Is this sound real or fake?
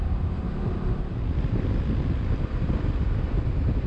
fake